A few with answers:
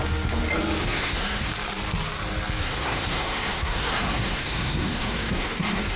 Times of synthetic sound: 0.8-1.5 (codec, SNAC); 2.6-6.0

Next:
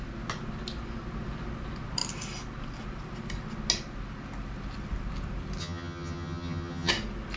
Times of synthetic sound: 5.6-6.9 (vocoder, HiFi-GAN)

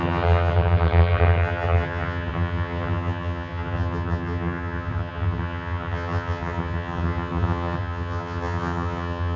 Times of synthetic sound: 0.0-9.4 (vocoder, HiFi-GAN)